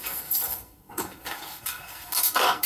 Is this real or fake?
fake